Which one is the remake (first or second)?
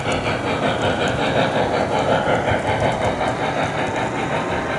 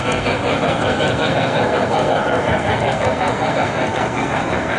second